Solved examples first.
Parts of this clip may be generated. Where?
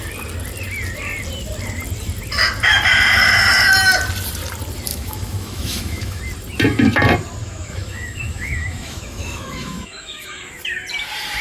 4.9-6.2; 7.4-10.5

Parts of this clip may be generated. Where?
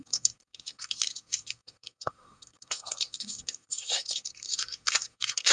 0.0-5.5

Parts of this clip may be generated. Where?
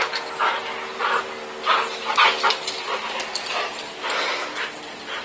none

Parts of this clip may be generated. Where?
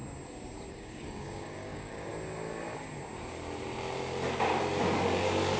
0.7-2.1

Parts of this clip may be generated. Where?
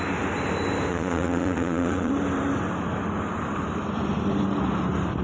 0.9-2.1